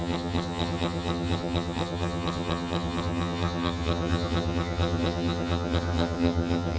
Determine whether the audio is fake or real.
fake